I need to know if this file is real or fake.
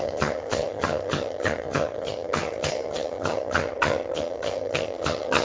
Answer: fake